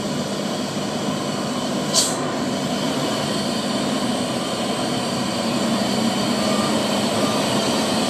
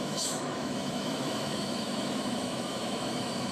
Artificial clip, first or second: second